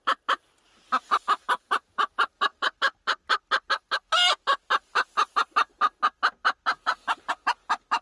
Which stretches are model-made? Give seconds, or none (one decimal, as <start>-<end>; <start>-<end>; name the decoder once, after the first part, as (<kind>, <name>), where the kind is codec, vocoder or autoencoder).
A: none